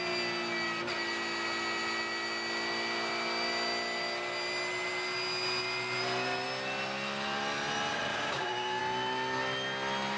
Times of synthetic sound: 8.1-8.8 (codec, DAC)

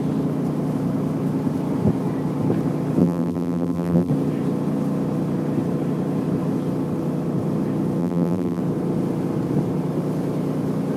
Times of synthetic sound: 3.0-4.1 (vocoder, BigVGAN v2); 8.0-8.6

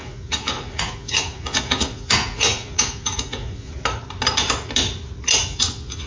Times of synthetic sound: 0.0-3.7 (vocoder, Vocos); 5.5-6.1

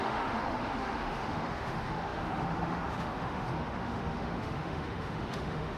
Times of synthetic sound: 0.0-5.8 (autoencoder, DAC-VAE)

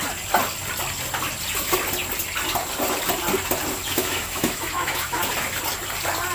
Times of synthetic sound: 3.9-5.2 (autoencoder, DAC-VAE)

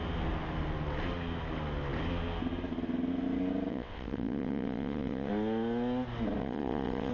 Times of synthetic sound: 3.7-5.3 (vocoder, WaveNeXt); 6.4-7.1